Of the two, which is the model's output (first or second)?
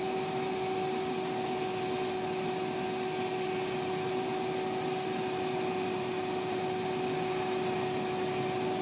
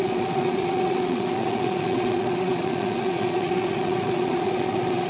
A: second